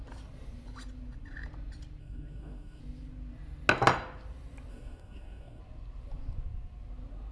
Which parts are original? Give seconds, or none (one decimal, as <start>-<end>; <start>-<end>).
0.0-2.0; 2.8-4.7; 5.6-7.3